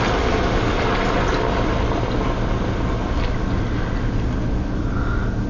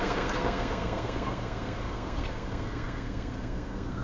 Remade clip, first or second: second